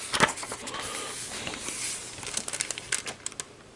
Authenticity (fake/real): real